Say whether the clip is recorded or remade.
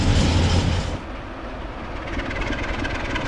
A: recorded